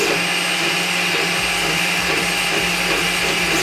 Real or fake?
real